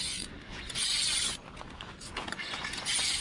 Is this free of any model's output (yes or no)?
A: no